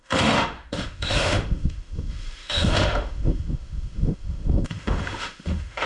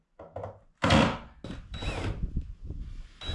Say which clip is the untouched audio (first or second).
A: second